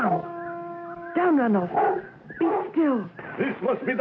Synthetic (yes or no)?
no